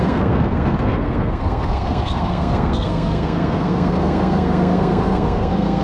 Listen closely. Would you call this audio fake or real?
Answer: fake